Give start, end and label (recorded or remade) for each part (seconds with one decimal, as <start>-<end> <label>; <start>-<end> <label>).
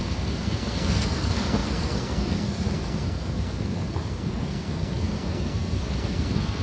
0.0-6.6 remade